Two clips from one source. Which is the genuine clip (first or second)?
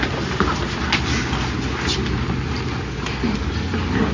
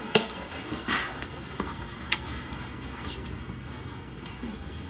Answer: first